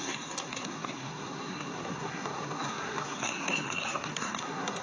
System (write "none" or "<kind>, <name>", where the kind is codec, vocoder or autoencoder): codec, SNAC